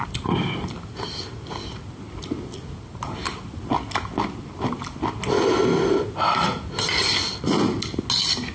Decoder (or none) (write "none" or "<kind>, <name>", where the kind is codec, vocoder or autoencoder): none